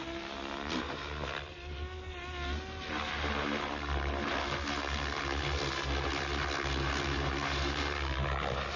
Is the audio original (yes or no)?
yes